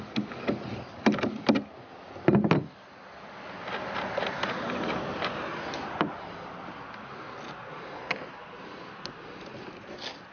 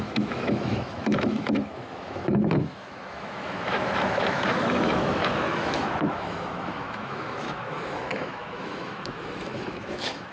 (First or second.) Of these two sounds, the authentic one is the first